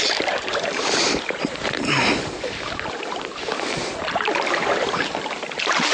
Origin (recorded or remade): remade